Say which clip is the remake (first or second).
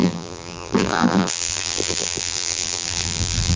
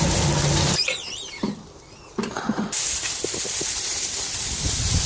first